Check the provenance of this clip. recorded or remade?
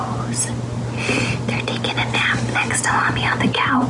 recorded